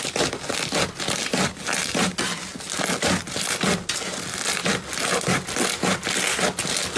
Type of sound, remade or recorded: recorded